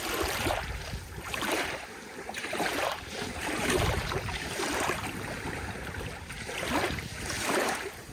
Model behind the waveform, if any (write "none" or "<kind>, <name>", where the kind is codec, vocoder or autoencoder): vocoder, BigVGAN v2